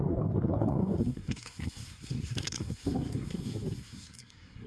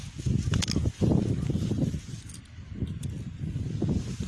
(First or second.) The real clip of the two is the second